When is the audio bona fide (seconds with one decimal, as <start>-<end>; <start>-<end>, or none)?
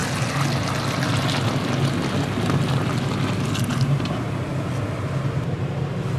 0.0-3.7; 4.5-5.2